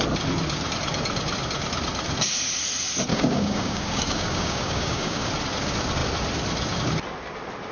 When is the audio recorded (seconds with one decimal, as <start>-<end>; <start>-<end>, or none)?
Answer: 0.0-3.1; 5.3-7.7